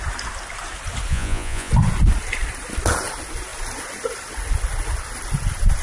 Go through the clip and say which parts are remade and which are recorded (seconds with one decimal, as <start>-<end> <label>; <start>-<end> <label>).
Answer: 0.0-1.1 recorded; 1.1-1.7 remade; 1.7-5.8 recorded